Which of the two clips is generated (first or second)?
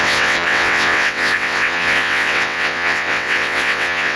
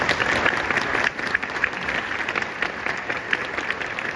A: first